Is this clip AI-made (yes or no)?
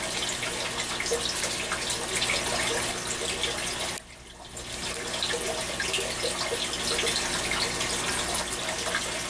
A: no